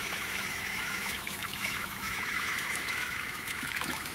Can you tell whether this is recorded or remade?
remade